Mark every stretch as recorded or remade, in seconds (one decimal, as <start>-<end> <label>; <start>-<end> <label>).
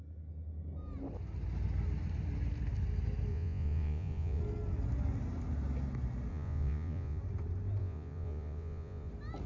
0.0-3.3 recorded; 3.3-4.4 remade; 4.4-6.3 recorded; 6.3-7.2 remade; 7.2-7.8 recorded; 7.8-9.1 remade; 9.1-9.5 recorded